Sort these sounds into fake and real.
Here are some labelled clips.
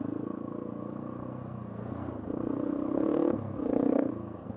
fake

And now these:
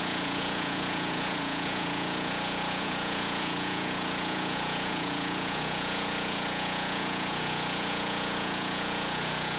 fake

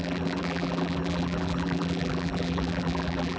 fake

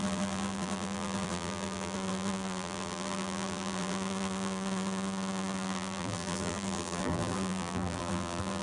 fake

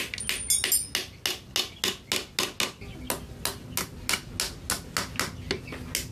real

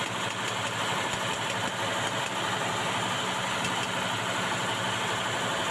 real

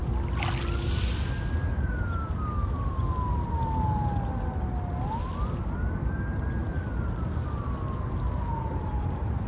real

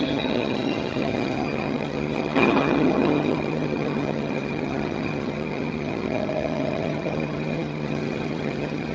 fake